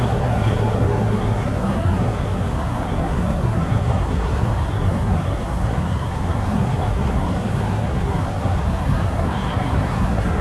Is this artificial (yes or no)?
yes